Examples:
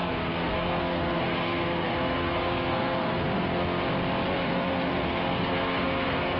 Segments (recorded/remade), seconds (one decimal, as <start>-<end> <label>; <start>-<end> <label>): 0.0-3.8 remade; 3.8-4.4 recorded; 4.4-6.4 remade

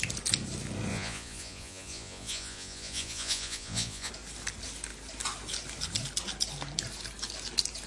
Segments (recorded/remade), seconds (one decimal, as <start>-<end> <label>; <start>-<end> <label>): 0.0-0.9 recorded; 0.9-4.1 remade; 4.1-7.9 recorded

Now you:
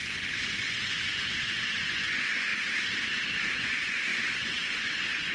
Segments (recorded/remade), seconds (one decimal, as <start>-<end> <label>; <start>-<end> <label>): 0.0-2.5 remade; 2.5-3.4 recorded; 3.4-5.3 remade

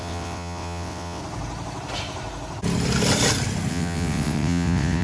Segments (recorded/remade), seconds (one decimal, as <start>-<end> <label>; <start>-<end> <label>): 0.0-1.2 remade; 1.2-3.7 recorded; 3.7-5.0 remade